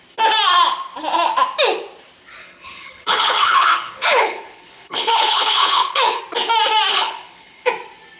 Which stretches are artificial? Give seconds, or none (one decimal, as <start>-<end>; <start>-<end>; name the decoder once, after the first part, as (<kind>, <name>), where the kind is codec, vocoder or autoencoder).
2.4-6.2 (codec, HILCodec); 6.9-7.7